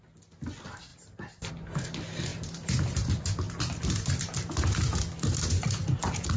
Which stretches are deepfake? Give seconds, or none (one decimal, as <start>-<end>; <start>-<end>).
0.9-1.5; 2.3-6.4